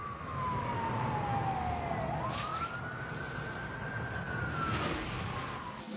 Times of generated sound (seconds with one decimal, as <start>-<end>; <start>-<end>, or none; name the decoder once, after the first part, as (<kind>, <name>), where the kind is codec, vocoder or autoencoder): 0.0-0.8 (autoencoder, DAC-VAE); 1.3-1.8